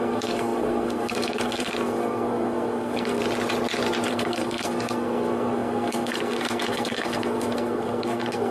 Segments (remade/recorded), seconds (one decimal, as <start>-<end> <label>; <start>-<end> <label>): 0.0-3.2 remade; 3.2-4.1 recorded; 4.1-8.5 remade